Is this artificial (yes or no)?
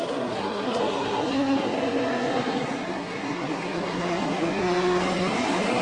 yes